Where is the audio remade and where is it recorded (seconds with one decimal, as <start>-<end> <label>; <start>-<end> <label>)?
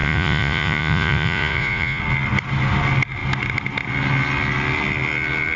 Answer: 0.0-2.0 remade; 2.0-5.6 recorded